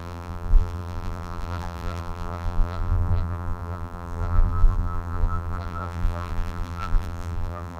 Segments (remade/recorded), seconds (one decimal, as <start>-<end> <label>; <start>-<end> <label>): 0.0-7.8 remade

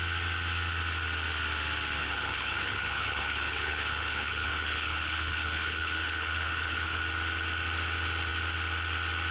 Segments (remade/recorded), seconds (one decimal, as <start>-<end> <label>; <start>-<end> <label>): 0.0-2.0 recorded; 2.0-7.0 remade; 7.0-9.3 recorded